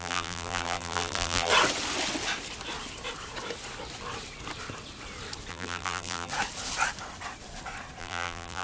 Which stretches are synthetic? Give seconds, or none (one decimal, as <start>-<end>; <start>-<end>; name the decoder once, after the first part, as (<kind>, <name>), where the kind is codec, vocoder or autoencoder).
0.0-1.5 (vocoder, BigVGAN v2); 5.5-6.3; 8.0-8.6